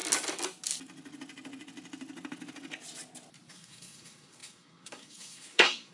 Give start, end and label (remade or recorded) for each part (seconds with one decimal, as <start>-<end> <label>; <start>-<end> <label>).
0.0-3.5 recorded; 3.5-5.9 remade